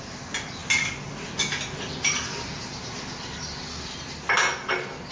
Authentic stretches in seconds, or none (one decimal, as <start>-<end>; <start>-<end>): 0.0-5.1